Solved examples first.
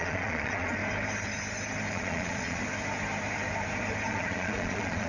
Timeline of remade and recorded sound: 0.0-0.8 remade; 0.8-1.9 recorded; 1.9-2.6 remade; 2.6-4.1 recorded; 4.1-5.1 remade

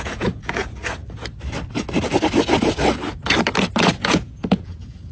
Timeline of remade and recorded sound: 0.0-0.8 remade; 0.8-3.9 recorded; 3.9-5.1 remade

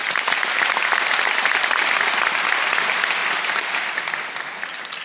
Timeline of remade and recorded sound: 0.0-5.0 recorded